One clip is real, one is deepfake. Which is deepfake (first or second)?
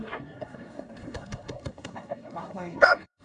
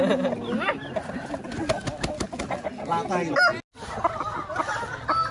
first